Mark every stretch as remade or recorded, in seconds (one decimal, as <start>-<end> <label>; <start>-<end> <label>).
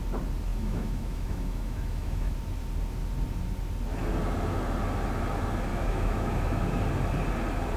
0.0-0.5 recorded; 0.5-2.3 remade; 2.3-5.7 recorded; 5.7-6.8 remade; 6.8-7.8 recorded